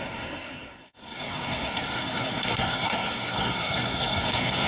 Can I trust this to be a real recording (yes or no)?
no